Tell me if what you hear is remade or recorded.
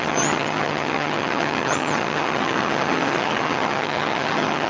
remade